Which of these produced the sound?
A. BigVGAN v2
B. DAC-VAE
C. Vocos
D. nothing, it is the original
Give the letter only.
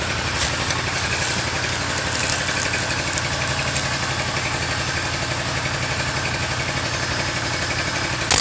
D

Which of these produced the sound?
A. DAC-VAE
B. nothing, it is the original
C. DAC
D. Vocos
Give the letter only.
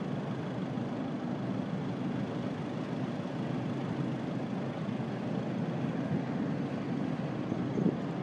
B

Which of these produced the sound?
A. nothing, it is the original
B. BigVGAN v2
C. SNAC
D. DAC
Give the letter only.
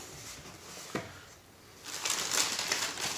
A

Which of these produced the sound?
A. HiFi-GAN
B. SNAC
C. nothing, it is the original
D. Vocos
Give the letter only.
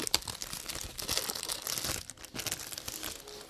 C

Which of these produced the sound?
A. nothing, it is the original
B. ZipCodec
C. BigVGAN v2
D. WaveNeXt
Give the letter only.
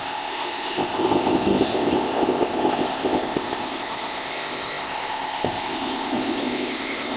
B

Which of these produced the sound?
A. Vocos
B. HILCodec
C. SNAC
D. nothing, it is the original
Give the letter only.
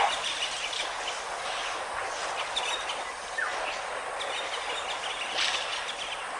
D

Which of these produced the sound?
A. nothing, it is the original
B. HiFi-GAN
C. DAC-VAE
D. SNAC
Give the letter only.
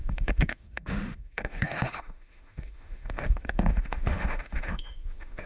C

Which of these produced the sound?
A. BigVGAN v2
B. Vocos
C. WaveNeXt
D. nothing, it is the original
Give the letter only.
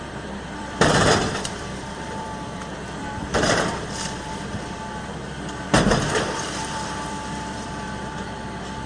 A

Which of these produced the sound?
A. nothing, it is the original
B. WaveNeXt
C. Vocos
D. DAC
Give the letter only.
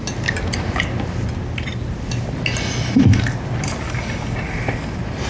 A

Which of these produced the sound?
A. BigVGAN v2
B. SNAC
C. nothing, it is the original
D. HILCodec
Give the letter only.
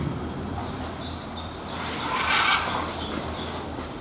C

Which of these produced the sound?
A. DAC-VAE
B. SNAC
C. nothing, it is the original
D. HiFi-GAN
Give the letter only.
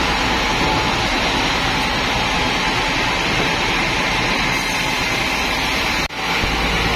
C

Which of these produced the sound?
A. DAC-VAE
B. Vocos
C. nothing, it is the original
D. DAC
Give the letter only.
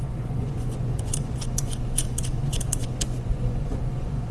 B